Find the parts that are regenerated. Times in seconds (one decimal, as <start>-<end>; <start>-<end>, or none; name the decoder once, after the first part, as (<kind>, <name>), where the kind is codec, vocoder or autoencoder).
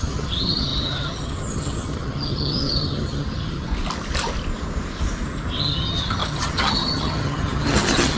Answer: 0.0-3.7 (vocoder, HiFi-GAN); 5.6-8.2